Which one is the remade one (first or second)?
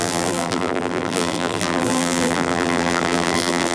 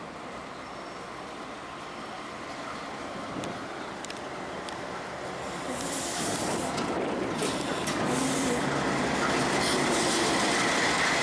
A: first